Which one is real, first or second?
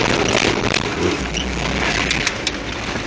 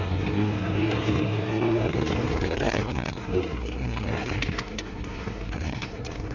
first